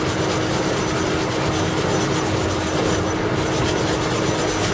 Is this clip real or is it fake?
real